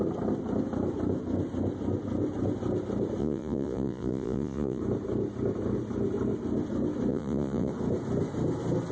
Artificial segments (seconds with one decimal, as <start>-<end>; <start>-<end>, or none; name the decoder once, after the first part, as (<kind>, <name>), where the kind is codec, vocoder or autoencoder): 3.2-4.8 (vocoder, Vocos); 7.1-7.7